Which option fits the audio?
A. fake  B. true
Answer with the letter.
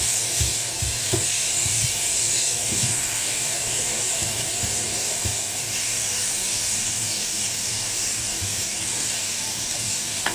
A